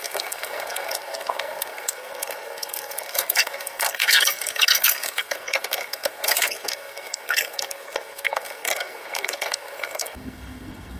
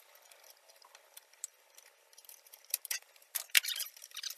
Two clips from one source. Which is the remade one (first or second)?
first